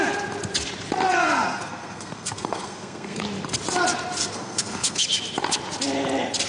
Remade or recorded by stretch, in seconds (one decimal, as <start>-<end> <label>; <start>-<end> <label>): 0.0-1.5 recorded; 1.5-3.2 remade; 3.2-4.2 recorded; 4.2-5.0 remade; 5.0-6.5 recorded

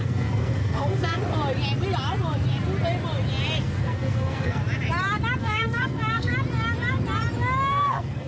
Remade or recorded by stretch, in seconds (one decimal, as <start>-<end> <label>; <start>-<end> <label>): 0.0-1.2 remade; 1.2-3.6 recorded; 3.6-4.6 remade; 4.6-5.4 recorded; 5.4-6.3 remade; 6.3-7.7 recorded; 7.7-8.3 remade